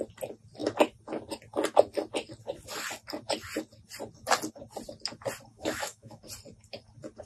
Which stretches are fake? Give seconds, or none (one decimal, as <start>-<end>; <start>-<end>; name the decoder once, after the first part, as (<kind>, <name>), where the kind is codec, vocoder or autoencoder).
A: 5.5-6.2 (autoencoder, DAC-VAE)